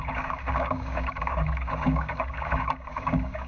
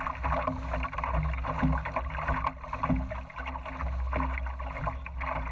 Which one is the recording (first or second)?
second